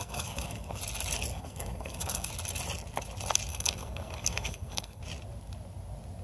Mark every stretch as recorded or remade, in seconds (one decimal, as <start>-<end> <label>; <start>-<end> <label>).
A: 0.0-0.8 remade; 0.8-1.3 recorded; 1.3-2.3 remade; 2.3-3.5 recorded; 3.5-5.0 remade; 5.0-6.2 recorded